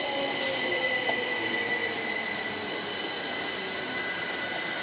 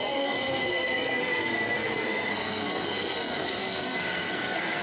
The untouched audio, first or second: first